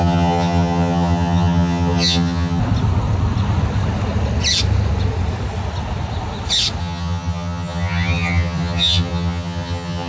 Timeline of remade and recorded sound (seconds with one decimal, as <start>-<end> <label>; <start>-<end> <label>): 0.0-2.6 remade; 2.6-6.8 recorded; 6.8-10.1 remade